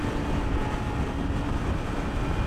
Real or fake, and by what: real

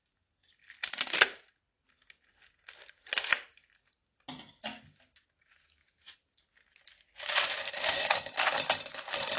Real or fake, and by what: real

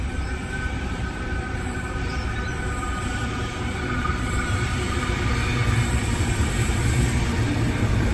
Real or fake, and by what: fake, vocoder, BigVGAN v2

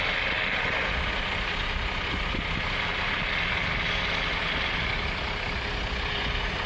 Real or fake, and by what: real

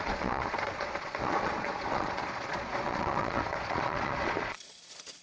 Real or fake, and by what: fake, vocoder, Vocos